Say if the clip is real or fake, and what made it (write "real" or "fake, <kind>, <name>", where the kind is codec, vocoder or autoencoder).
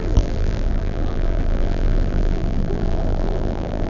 fake, vocoder, BigVGAN v2